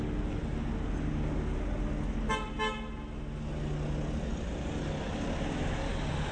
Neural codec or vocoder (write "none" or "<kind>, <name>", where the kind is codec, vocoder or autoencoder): none